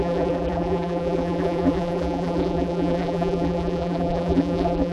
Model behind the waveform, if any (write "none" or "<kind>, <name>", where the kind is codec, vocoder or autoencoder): vocoder, BigVGAN v2